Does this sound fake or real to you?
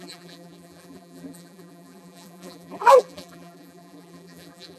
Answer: fake